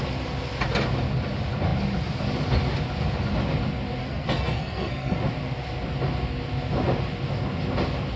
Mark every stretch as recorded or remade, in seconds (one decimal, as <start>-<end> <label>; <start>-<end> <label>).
0.0-4.0 recorded; 4.0-5.2 remade; 5.2-8.2 recorded